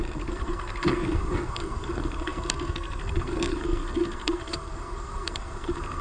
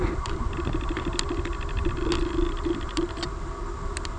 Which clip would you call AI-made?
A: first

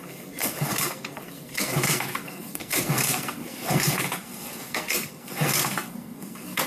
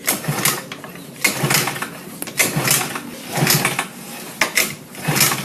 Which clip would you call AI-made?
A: first